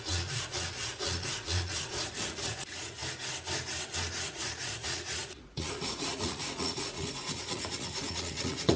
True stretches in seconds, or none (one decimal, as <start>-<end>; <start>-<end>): 3.0-4.1